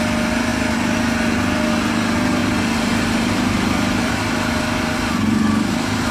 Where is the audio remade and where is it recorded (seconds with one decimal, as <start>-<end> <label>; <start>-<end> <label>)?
0.0-2.4 recorded; 2.4-6.1 remade